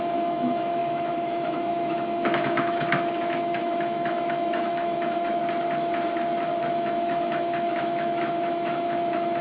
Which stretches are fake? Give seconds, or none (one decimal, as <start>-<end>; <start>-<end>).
0.0-5.4; 6.6-9.4